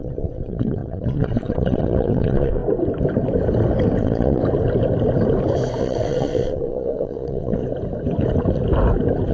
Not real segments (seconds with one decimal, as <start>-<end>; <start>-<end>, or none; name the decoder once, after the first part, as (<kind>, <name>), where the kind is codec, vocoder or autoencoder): 0.0-2.6 (vocoder, WaveNeXt); 4.0-4.4; 5.8-7.6